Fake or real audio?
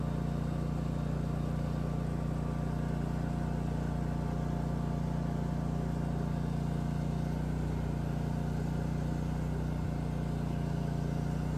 real